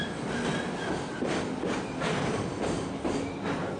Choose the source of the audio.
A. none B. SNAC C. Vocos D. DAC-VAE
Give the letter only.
A